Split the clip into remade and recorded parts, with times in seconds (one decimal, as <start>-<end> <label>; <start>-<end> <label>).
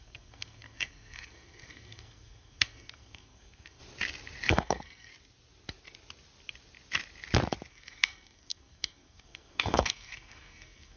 0.0-3.8 remade; 3.8-4.5 recorded; 4.5-5.1 remade; 5.1-7.7 recorded; 7.7-11.0 remade